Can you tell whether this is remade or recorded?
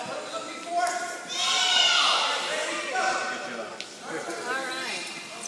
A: remade